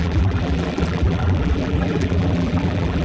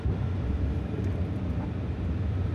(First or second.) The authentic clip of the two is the second